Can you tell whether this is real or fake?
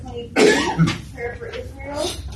real